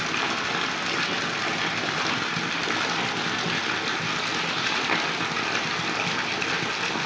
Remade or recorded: recorded